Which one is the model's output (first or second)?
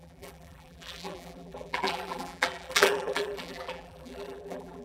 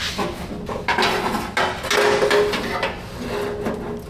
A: first